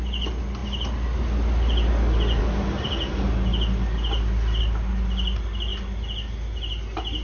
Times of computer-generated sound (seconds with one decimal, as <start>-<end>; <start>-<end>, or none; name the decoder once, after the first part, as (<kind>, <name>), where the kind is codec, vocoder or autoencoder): none